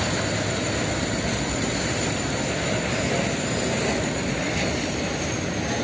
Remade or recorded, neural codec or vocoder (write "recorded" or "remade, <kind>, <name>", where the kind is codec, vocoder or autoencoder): recorded